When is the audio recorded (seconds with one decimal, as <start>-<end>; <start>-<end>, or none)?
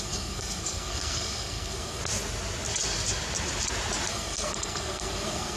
2.0-4.1